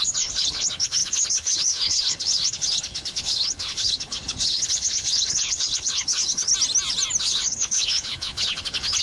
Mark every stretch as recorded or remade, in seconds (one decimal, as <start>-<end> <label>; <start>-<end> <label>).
0.0-6.5 remade; 6.5-7.2 recorded; 7.2-9.0 remade